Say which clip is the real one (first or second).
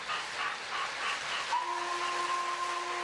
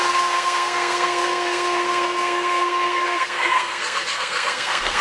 first